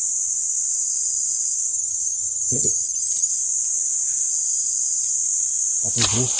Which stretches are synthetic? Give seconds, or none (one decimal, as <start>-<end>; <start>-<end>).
1.7-3.3